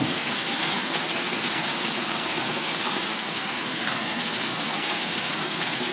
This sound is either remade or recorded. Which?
remade